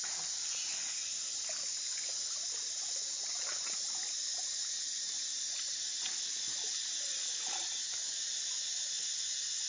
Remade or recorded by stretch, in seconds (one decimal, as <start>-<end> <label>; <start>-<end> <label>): 0.0-9.7 recorded